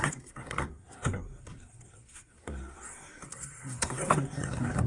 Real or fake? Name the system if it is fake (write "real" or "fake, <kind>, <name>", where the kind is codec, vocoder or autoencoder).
fake, codec, SNAC